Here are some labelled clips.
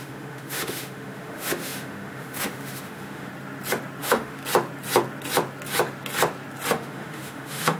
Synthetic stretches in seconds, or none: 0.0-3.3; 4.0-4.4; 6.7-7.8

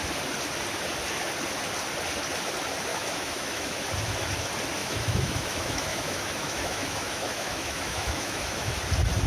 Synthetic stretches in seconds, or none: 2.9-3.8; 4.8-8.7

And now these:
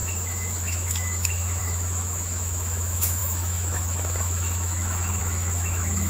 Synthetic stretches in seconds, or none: 0.0-6.1

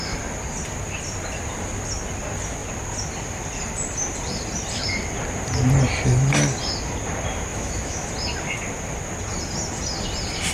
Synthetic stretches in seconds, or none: 7.5-8.1